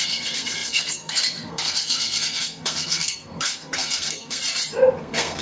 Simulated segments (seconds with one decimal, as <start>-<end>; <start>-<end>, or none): 0.0-4.4; 5.0-5.4